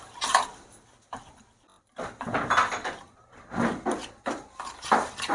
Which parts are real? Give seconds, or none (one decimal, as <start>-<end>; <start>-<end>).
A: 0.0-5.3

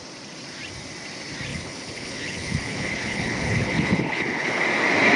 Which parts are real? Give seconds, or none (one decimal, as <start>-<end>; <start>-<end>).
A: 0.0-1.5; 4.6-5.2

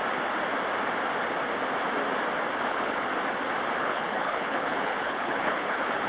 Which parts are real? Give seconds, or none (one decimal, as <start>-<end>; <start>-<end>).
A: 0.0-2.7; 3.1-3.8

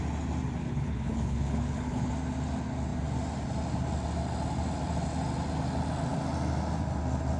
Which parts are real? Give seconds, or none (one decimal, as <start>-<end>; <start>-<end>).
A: 0.0-0.6; 2.1-7.4

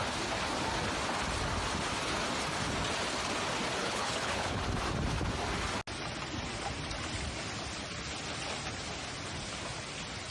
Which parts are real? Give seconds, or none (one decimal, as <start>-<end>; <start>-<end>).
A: 0.0-3.8; 4.6-10.3

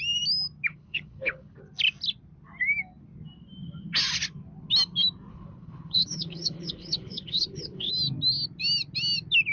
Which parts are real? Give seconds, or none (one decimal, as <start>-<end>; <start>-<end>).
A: 0.0-0.7; 1.6-5.3; 7.9-9.5